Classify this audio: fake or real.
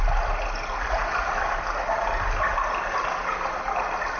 real